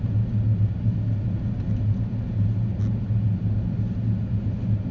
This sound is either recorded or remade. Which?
recorded